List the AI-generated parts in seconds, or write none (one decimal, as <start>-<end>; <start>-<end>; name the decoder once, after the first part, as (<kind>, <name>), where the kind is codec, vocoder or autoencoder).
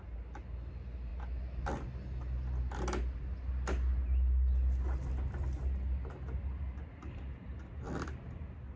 none